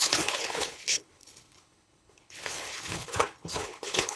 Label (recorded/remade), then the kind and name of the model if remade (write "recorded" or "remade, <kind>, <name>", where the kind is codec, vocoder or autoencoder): remade, codec, HILCodec